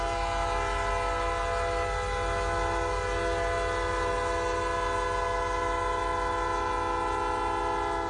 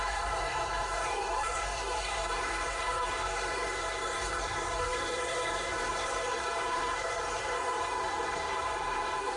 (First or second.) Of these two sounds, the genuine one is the first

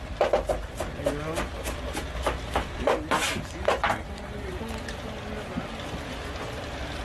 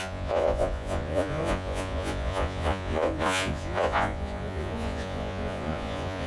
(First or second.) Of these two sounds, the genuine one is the first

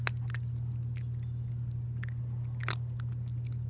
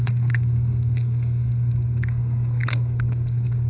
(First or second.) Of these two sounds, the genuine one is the first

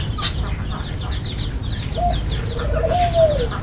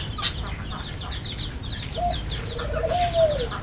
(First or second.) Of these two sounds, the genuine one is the first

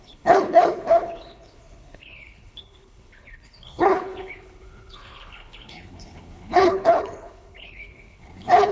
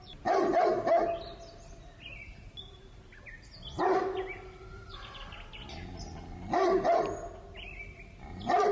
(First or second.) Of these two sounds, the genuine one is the second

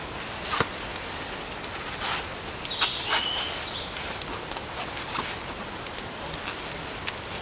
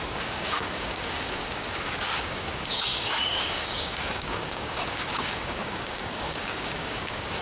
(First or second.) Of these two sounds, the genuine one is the first